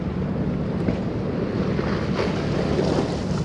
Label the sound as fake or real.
real